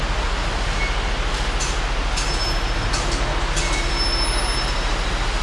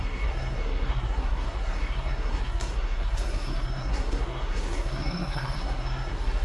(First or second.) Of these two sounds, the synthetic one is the second